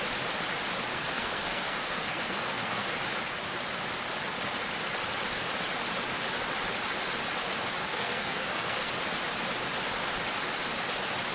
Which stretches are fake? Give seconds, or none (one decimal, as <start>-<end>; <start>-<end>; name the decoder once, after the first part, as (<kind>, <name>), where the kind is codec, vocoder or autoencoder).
0.9-2.9 (codec, SNAC); 7.8-8.9